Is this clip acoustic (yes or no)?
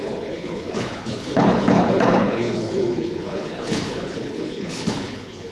no